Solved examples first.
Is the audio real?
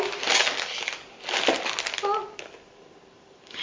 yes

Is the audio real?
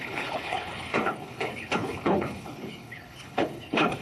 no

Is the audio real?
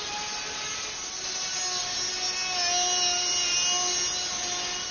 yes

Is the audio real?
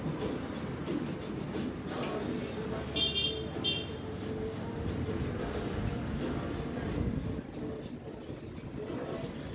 yes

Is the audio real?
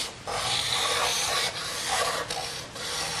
yes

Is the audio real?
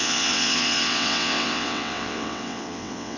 no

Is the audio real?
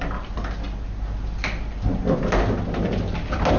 yes